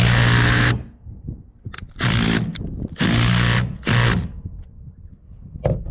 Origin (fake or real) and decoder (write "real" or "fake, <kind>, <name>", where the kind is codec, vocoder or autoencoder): real